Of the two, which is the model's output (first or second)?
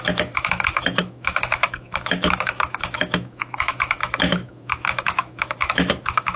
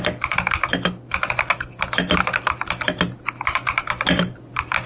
first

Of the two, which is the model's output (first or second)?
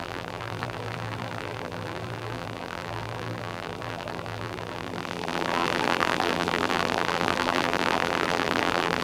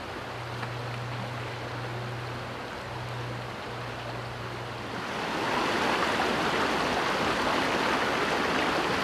first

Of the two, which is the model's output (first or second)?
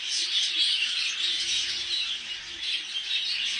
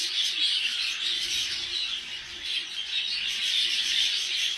second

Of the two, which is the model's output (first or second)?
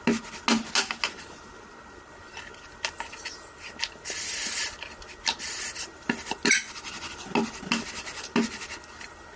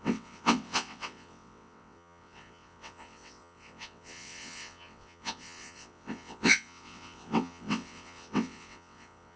second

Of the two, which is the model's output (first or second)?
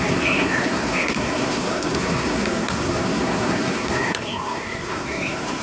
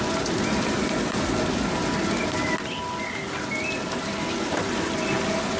first